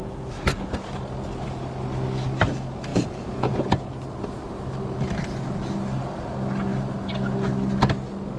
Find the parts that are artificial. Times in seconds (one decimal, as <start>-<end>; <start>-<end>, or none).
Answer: 2.9-3.6